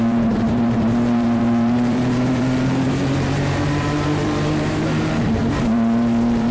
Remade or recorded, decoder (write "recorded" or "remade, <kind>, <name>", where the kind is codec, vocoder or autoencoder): remade, vocoder, BigVGAN v2